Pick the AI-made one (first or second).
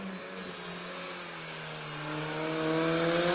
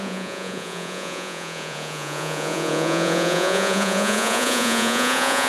second